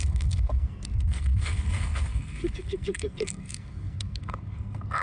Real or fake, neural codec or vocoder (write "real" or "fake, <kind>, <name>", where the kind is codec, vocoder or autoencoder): fake, codec, SNAC